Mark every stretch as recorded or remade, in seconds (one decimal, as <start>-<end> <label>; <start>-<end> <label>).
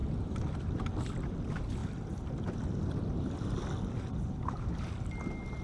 0.0-5.6 recorded